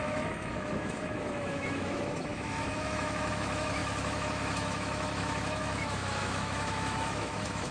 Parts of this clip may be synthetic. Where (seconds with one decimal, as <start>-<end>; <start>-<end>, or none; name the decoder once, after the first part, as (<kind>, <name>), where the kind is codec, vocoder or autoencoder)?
0.0-7.7 (autoencoder, DAC-VAE)